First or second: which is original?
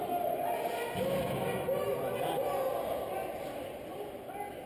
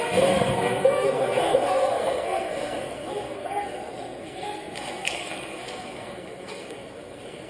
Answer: first